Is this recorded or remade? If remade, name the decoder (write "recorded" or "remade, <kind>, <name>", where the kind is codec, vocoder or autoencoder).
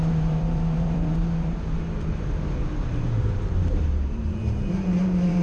remade, vocoder, BigVGAN v2